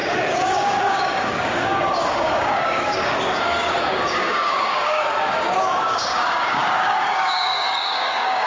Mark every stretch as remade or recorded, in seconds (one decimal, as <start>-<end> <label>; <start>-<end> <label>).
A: 0.0-8.5 remade